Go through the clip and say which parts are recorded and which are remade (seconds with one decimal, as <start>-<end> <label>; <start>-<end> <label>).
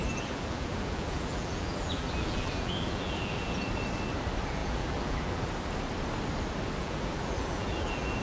0.0-3.7 remade; 3.7-4.6 recorded; 4.6-5.5 remade; 5.5-6.8 recorded; 6.8-8.2 remade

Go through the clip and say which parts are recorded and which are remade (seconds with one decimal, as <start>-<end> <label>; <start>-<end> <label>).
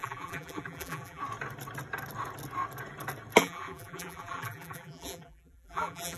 0.0-1.2 remade; 1.2-3.4 recorded; 3.4-6.2 remade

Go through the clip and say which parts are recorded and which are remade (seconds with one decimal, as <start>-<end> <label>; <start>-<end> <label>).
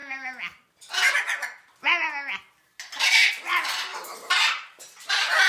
0.0-3.9 recorded; 3.9-5.1 remade; 5.1-5.5 recorded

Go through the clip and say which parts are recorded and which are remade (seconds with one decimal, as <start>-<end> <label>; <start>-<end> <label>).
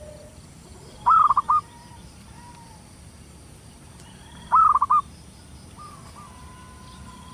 0.0-0.7 recorded; 0.7-2.3 remade; 2.3-7.3 recorded